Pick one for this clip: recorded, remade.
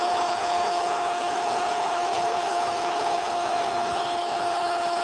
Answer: remade